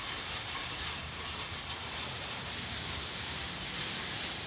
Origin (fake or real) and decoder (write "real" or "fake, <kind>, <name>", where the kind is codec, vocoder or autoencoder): fake, vocoder, BigVGAN v2